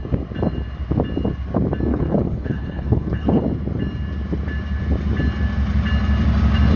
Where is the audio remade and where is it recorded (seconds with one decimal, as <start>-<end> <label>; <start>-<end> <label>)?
0.0-1.9 recorded; 1.9-3.4 remade; 3.4-6.8 recorded